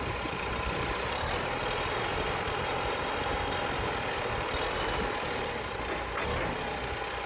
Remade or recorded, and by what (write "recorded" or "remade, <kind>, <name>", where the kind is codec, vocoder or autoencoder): recorded